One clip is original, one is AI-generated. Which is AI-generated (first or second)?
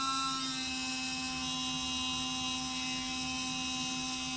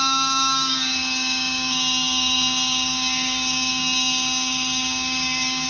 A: second